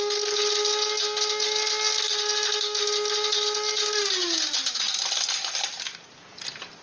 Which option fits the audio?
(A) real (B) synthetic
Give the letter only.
A